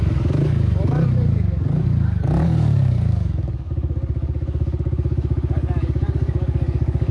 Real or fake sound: fake